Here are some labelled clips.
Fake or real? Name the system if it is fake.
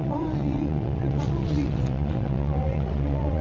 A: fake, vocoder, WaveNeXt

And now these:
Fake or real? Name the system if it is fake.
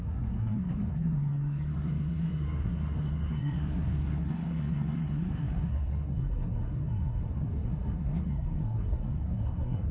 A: fake, codec, SNAC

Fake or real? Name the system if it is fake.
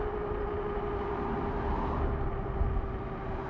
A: real